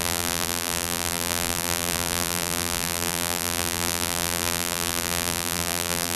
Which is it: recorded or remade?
remade